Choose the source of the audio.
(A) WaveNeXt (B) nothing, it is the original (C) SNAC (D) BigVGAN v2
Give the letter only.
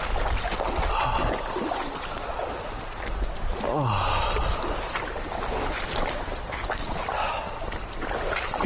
B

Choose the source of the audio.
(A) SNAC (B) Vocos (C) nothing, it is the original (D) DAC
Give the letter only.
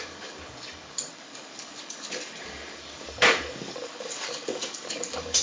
D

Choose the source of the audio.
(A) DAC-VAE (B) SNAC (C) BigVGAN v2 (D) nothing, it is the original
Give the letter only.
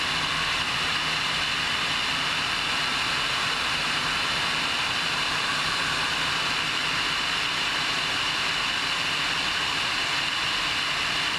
D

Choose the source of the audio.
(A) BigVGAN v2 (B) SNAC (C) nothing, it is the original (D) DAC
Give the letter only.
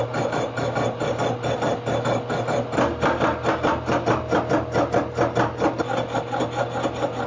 C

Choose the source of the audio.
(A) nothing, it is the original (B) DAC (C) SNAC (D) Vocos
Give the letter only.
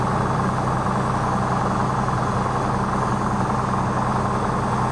A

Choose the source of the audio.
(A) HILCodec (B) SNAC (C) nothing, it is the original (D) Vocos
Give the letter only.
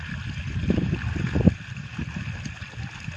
C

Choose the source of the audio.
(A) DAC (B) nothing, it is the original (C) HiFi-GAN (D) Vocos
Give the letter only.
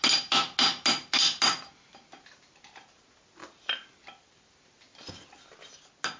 B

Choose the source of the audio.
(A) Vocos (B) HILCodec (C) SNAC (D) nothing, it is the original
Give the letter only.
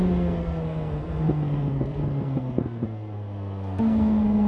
C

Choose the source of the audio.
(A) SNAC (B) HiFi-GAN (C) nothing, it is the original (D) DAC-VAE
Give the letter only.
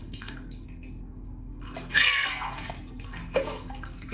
A